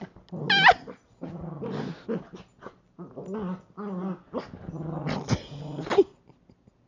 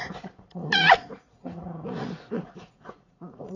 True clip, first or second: first